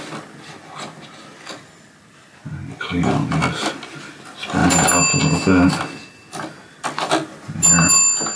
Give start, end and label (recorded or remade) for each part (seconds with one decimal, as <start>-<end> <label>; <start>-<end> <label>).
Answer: 0.0-8.4 recorded